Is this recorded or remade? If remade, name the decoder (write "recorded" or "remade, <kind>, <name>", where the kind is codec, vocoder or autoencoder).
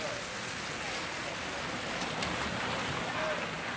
recorded